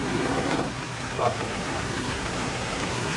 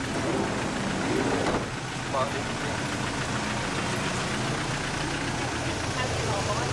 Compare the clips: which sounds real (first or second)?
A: second